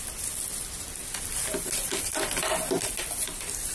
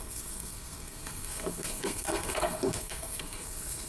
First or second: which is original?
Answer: first